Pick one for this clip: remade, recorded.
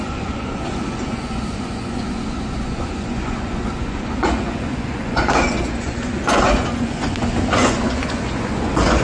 remade